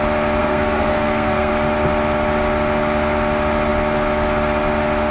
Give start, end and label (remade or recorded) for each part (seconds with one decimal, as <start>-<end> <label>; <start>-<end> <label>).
0.0-0.4 recorded; 0.4-1.5 remade; 1.5-5.1 recorded